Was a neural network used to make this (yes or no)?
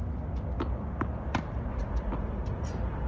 no